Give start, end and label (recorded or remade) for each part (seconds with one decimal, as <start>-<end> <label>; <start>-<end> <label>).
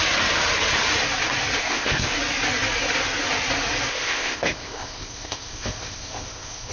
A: 0.0-1.6 recorded; 1.6-2.1 remade; 2.1-3.9 recorded; 3.9-6.7 remade